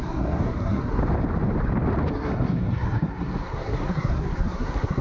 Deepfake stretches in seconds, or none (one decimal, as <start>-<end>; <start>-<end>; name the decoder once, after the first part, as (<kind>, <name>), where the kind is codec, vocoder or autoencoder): 0.0-1.0 (codec, SNAC); 2.1-5.0